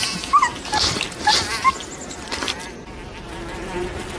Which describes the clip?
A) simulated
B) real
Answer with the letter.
B